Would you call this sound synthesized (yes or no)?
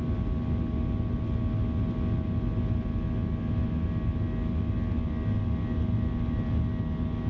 no